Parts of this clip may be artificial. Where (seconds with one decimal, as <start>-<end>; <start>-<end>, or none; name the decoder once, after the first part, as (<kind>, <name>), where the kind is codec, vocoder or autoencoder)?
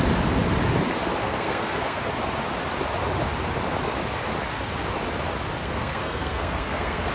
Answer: 1.2-2.0 (codec, SNAC); 5.6-7.1